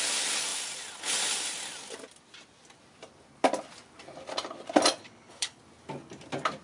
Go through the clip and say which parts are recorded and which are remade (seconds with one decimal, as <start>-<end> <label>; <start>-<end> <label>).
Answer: 0.0-5.0 recorded; 5.0-5.6 remade; 5.6-6.6 recorded

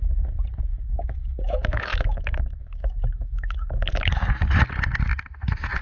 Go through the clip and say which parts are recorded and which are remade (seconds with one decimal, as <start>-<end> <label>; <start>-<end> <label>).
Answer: 0.0-0.7 recorded; 0.7-4.1 remade; 4.1-5.8 recorded

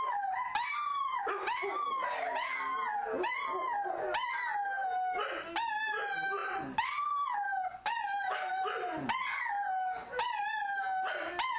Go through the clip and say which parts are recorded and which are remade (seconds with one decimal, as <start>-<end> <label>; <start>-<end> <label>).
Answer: 0.0-0.5 recorded; 0.5-1.2 remade; 1.2-11.6 recorded

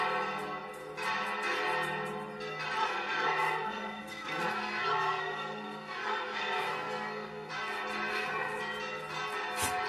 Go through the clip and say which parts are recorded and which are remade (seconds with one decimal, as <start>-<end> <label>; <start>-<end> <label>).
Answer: 0.0-2.8 recorded; 2.8-7.5 remade; 7.5-8.1 recorded; 8.1-8.6 remade; 8.6-9.9 recorded

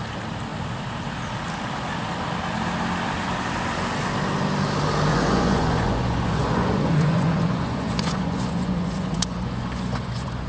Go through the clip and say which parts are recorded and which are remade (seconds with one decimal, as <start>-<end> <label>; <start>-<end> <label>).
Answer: 0.0-5.1 recorded; 5.1-10.5 remade

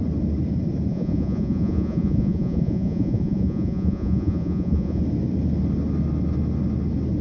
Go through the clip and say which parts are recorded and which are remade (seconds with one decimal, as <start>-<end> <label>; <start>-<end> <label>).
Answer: 0.0-0.9 recorded; 0.9-5.0 remade; 5.0-7.2 recorded